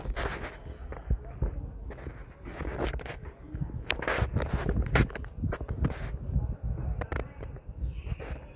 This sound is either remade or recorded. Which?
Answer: recorded